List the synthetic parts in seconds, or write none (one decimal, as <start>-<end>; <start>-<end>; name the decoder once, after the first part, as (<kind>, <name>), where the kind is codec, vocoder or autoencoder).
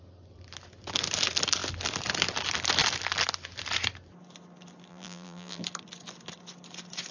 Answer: 4.9-5.6 (vocoder, BigVGAN v2)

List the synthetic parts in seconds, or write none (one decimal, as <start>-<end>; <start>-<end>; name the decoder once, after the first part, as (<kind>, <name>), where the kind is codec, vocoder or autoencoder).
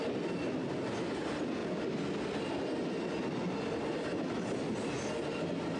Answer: none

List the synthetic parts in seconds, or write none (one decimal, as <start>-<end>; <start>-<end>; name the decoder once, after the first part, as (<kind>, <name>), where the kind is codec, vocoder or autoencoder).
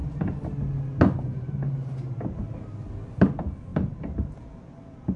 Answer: 3.7-5.2 (vocoder, BigVGAN v2)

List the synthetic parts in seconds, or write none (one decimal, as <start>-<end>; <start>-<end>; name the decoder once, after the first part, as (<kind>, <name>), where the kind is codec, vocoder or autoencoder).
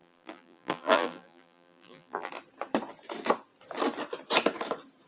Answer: 0.0-2.3 (vocoder, BigVGAN v2)